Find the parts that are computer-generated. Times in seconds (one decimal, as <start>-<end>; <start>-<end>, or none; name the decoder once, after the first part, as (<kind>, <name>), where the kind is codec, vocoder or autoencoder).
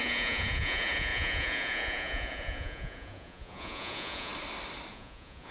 0.0-4.3 (vocoder, Vocos); 4.9-5.5